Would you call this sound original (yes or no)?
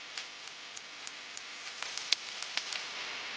yes